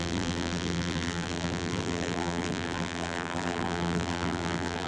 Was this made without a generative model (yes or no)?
no